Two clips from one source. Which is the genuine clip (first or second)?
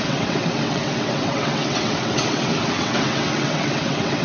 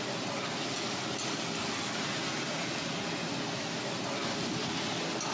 second